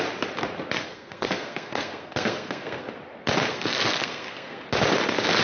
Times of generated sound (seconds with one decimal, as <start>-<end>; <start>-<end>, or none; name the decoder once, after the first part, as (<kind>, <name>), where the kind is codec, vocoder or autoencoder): 0.9-2.9 (codec, SNAC); 3.5-4.6